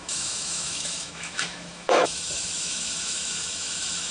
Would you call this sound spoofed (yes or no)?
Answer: yes